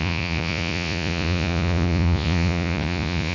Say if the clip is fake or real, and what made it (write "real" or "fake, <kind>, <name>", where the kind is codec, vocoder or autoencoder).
fake, vocoder, Vocos